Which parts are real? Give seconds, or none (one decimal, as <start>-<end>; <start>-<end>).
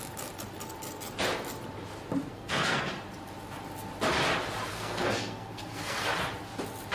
0.0-2.3; 2.9-4.7; 6.1-6.9